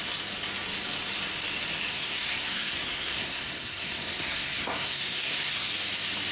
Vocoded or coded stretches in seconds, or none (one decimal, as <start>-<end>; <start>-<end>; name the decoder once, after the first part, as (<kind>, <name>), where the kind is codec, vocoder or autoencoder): 1.9-5.7 (codec, SNAC)